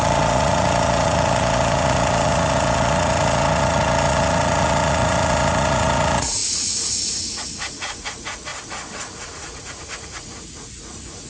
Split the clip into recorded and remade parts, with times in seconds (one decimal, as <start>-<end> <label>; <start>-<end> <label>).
0.0-8.5 remade; 8.5-9.2 recorded; 9.2-11.3 remade